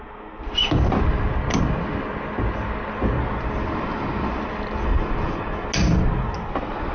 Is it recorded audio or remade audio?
recorded